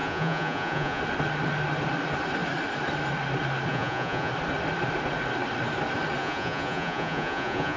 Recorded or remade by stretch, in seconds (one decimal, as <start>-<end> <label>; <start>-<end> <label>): 0.0-1.0 remade; 1.0-3.7 recorded; 3.7-4.3 remade; 4.3-6.2 recorded; 6.2-7.8 remade